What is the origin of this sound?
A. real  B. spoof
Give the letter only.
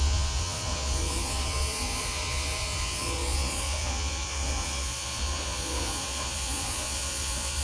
B